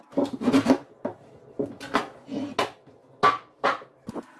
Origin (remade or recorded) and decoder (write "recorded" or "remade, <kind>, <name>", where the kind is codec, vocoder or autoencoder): recorded